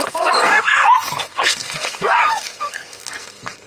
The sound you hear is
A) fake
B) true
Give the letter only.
A